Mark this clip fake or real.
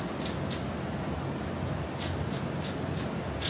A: real